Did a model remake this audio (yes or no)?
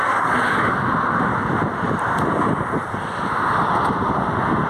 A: no